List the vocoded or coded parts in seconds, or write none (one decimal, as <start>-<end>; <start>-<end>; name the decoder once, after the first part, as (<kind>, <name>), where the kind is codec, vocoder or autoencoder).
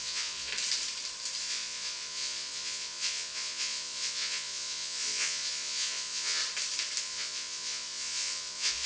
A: 0.0-0.5 (vocoder, Vocos); 1.4-6.4; 7.0-8.9